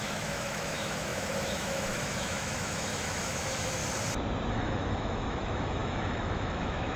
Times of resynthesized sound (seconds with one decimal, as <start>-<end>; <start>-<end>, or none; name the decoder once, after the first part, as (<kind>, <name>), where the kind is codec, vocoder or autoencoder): 0.0-3.8 (autoencoder, DAC-VAE); 4.5-7.0